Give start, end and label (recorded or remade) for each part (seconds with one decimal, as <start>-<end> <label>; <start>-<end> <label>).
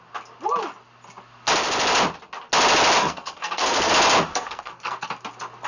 0.0-3.0 recorded; 3.0-3.9 remade; 3.9-4.3 recorded; 4.3-5.1 remade; 5.1-5.7 recorded